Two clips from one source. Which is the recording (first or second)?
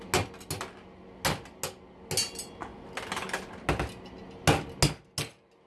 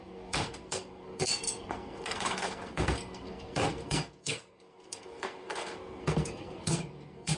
first